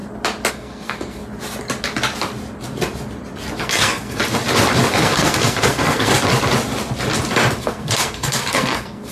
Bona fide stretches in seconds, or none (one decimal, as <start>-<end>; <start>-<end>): 0.0-0.5; 1.2-3.6; 4.2-4.9; 6.1-7.6

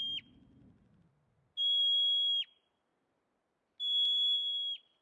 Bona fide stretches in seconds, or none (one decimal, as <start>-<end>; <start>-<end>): 0.0-5.0

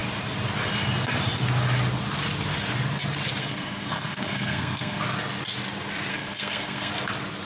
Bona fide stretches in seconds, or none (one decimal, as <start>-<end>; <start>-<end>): 0.0-3.4; 5.0-6.1; 6.9-7.5

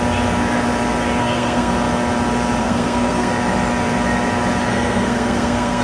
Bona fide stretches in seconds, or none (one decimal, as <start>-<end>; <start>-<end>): 0.0-1.2; 1.7-2.6; 3.3-4.7

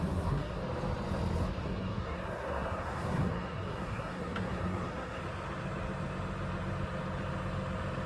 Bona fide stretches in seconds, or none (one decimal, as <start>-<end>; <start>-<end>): 0.6-1.6; 5.2-8.1

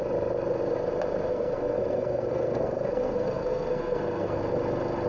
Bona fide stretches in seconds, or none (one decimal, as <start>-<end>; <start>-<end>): 0.0-1.3; 4.4-5.1